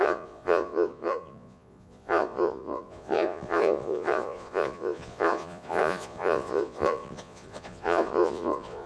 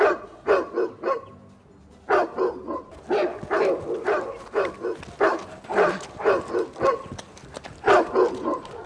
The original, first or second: second